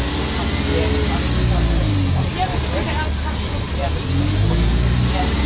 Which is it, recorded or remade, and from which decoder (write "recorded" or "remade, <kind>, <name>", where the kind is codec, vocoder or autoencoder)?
recorded